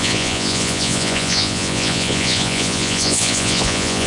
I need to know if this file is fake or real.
fake